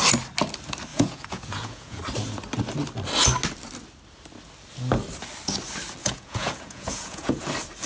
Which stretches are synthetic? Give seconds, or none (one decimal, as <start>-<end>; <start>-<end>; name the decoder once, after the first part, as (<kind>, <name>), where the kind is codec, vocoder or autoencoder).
0.9-2.0 (vocoder, Vocos); 6.0-7.4